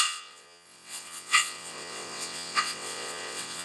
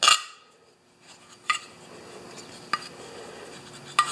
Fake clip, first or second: first